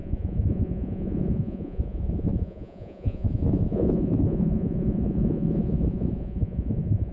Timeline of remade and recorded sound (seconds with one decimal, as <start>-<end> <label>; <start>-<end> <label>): 0.0-7.1 remade